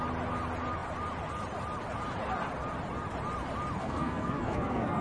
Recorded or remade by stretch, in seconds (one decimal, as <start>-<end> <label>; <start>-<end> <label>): 0.0-3.8 recorded; 3.8-5.0 remade